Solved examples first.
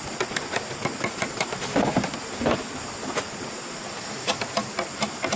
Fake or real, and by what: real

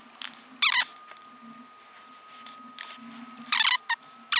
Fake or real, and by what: real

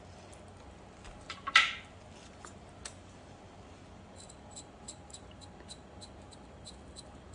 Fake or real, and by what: real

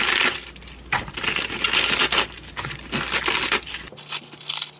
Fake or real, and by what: real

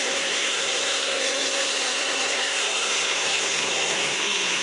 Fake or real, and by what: fake, codec, SNAC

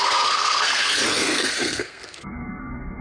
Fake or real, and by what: fake, codec, SNAC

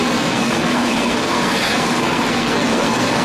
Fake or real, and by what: fake, codec, SNAC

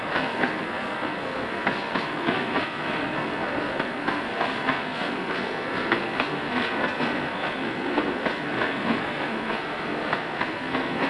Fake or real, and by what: fake, codec, SNAC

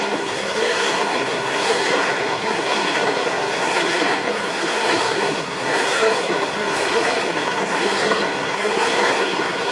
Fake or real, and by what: fake, codec, SNAC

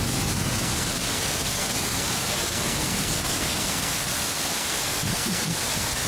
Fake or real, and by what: fake, codec, SNAC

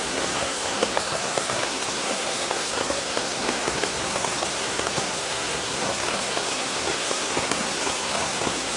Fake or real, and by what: fake, codec, SNAC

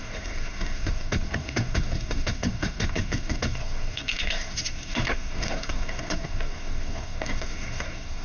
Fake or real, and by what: fake, codec, SNAC